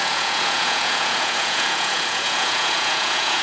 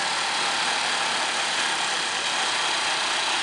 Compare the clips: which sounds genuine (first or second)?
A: second